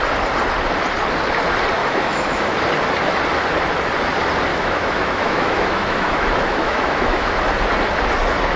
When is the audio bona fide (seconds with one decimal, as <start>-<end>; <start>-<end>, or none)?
0.0-1.8; 2.5-4.5; 7.3-8.6